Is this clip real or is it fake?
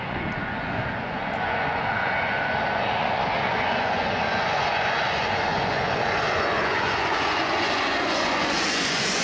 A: fake